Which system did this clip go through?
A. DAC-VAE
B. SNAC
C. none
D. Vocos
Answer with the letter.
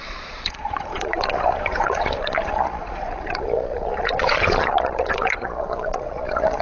D